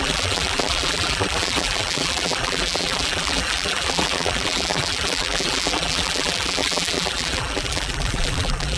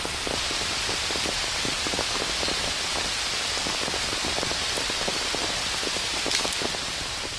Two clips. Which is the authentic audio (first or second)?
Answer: second